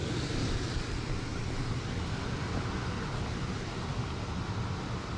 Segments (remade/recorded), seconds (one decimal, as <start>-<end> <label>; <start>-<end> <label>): 0.0-5.2 recorded